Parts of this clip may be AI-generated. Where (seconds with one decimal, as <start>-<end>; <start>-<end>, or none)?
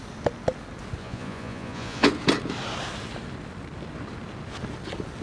1.0-2.1